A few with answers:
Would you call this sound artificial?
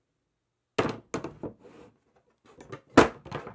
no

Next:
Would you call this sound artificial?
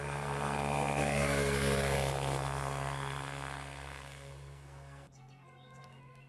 yes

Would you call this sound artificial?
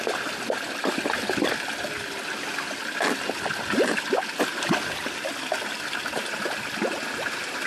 no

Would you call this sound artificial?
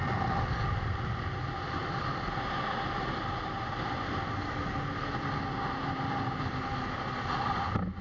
no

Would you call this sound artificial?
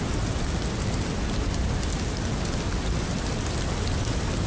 no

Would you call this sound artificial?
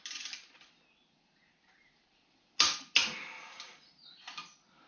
no